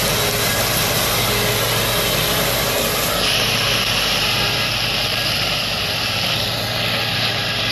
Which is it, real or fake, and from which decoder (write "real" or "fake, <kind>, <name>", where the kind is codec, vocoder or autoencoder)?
real